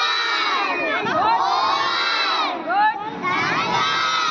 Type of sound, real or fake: real